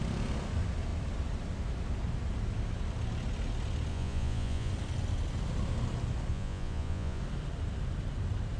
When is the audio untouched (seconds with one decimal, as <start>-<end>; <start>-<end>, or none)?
0.0-3.9; 4.7-6.3; 7.2-8.6